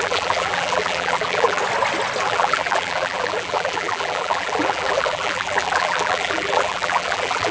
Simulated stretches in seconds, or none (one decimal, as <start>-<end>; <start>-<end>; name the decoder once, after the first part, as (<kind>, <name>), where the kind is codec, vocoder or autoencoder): 0.0-1.6 (vocoder, BigVGAN v2); 2.2-7.5